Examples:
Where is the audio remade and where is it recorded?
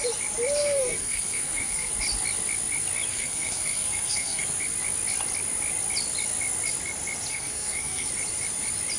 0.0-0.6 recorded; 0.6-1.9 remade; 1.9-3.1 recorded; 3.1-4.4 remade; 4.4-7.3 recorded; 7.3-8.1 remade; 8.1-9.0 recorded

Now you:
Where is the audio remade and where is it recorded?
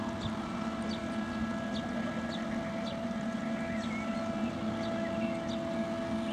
0.0-6.3 recorded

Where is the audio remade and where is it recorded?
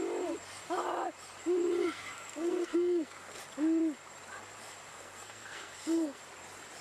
0.0-1.8 recorded; 1.8-3.4 remade; 3.4-4.9 recorded; 4.9-6.2 remade; 6.2-6.8 recorded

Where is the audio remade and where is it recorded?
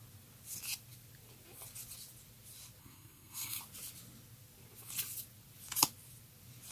0.0-2.8 recorded; 2.8-3.6 remade; 3.6-6.7 recorded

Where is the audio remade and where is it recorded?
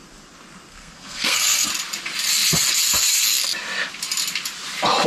0.0-0.7 recorded; 0.7-1.7 remade; 1.7-5.1 recorded